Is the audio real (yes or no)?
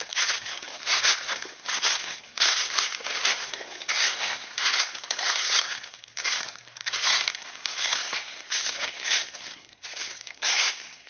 no